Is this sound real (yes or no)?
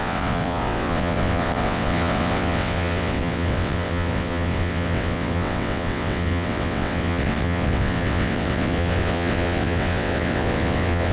no